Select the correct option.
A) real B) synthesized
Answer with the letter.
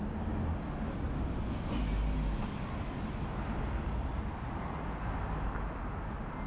A